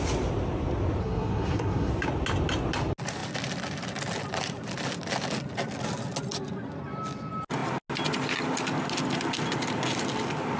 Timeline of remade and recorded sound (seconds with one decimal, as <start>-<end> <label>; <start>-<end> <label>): 0.0-1.0 recorded; 1.0-1.9 remade; 1.9-10.6 recorded